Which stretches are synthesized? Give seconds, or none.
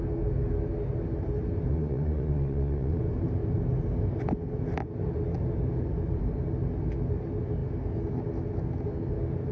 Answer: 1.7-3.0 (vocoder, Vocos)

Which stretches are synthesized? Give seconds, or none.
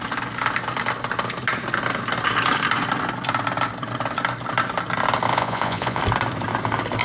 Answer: 5.3-6.0 (vocoder, Vocos)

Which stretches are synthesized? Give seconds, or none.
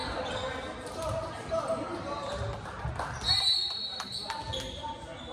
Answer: none